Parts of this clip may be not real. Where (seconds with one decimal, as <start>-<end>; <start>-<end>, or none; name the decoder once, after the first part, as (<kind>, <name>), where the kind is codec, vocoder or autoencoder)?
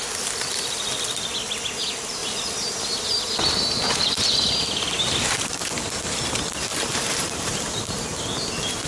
6.7-8.0 (vocoder, BigVGAN v2)